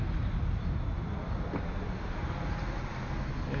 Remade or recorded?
recorded